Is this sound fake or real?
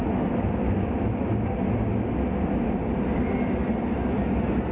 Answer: real